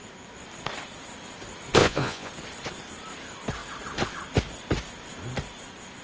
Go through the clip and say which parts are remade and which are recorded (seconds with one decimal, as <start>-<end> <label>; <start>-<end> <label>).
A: 0.0-1.8 recorded; 1.8-2.3 remade; 2.3-6.0 recorded